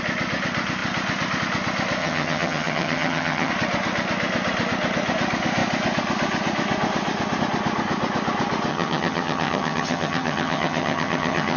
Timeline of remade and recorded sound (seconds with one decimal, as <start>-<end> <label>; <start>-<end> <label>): 0.0-2.0 recorded; 2.0-3.5 remade; 3.5-8.7 recorded; 8.7-11.6 remade